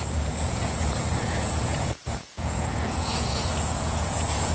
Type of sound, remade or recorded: remade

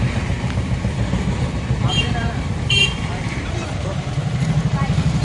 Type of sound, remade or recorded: remade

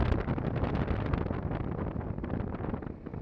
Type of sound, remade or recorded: recorded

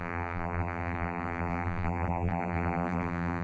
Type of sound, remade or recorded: remade